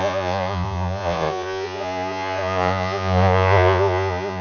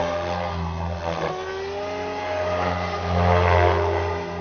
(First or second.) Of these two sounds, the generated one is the first